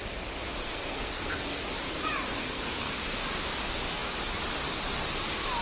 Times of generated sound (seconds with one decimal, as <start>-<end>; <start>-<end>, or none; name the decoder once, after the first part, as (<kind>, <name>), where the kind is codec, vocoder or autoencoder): 0.6-1.4 (codec, SNAC); 2.3-2.9